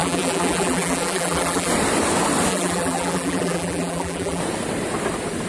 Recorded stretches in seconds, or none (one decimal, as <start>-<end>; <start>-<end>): 1.7-2.5; 4.4-5.5

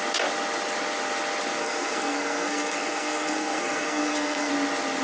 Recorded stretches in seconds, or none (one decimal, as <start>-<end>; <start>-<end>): 0.0-1.6; 4.5-5.0

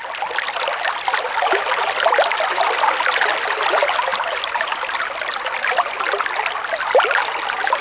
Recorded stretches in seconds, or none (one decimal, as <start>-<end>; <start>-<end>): 0.0-7.8

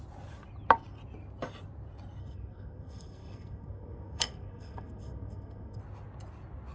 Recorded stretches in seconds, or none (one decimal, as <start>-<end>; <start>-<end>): 0.0-2.2; 5.8-6.7

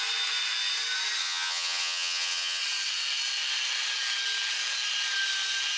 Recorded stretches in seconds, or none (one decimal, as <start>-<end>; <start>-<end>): 0.0-1.2; 2.6-5.8

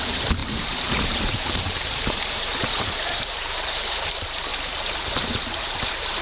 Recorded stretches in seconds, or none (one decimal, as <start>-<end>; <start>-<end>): 0.0-0.4; 4.1-4.5

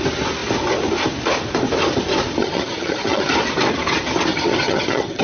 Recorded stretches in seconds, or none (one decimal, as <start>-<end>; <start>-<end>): 0.0-2.4; 3.3-4.3

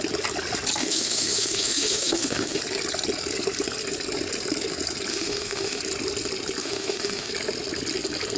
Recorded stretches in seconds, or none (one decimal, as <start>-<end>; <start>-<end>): 0.0-0.8; 2.6-5.1; 5.8-6.6; 7.3-8.4